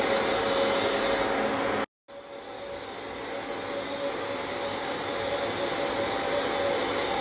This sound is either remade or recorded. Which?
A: recorded